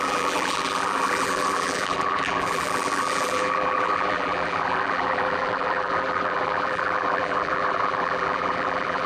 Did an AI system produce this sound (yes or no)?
yes